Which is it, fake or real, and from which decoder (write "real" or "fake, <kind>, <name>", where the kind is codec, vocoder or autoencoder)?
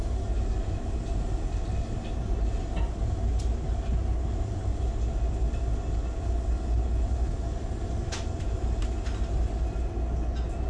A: real